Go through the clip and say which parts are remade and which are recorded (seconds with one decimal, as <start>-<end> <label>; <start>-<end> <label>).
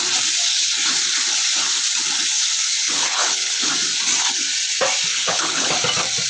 0.0-2.8 recorded; 2.8-3.7 remade; 3.7-5.1 recorded; 5.1-5.7 remade; 5.7-6.3 recorded